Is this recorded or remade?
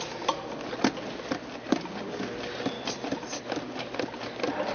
recorded